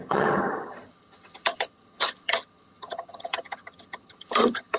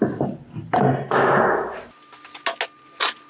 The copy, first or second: first